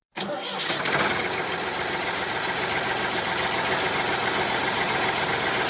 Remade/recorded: recorded